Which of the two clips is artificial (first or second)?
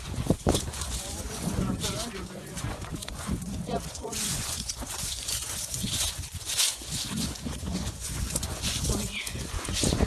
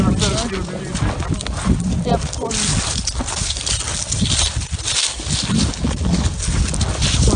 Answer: first